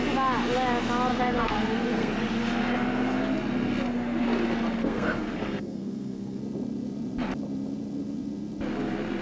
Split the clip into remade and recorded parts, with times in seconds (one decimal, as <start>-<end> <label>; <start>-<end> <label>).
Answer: 0.0-1.1 recorded; 1.1-2.1 remade; 2.1-4.8 recorded; 4.8-6.4 remade; 6.4-9.2 recorded